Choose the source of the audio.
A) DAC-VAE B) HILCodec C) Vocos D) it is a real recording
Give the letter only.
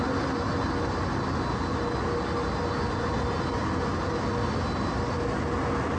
D